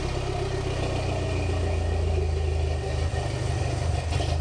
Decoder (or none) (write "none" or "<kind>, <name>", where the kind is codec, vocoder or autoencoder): none